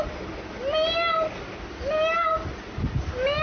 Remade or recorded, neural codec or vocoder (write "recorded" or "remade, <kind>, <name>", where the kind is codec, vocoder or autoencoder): recorded